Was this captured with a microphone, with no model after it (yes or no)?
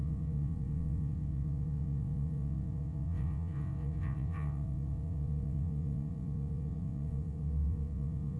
no